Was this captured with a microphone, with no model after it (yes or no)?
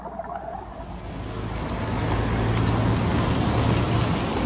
yes